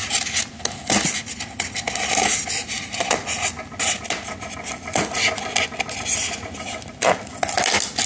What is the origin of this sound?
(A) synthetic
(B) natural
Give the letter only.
B